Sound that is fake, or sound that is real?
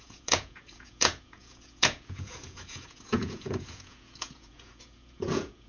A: fake